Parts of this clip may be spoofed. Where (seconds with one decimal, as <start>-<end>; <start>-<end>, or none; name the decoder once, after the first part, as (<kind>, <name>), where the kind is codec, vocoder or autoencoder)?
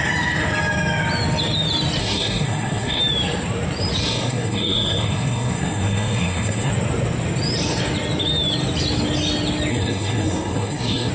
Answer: 2.0-3.0 (codec, SNAC); 4.0-6.7; 9.7-11.1